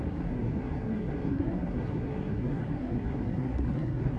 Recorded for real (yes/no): no